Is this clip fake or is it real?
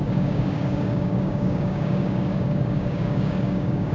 fake